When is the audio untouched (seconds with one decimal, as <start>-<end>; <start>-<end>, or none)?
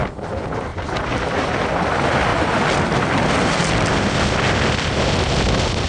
0.0-5.9